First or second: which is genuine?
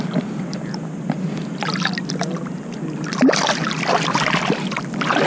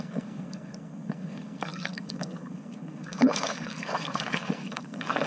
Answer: first